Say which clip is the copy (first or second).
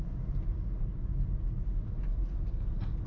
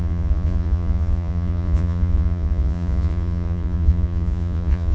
second